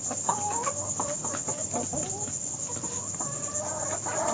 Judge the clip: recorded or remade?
recorded